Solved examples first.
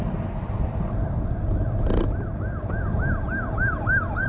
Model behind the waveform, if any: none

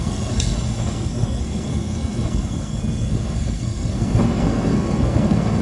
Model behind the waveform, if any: codec, SNAC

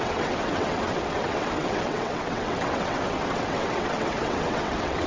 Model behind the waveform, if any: vocoder, WaveNeXt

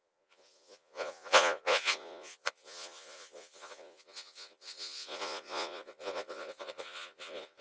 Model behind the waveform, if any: vocoder, Vocos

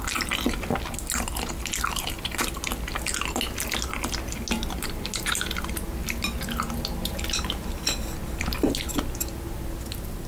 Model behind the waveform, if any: none